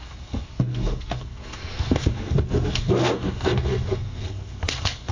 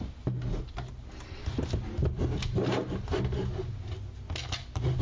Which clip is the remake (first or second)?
first